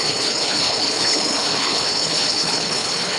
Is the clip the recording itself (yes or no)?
no